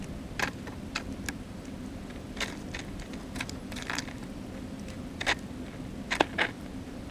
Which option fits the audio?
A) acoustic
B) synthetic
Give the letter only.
A